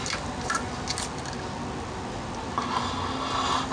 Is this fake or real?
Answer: real